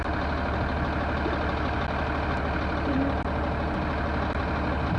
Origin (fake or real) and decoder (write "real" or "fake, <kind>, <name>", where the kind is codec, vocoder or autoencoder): real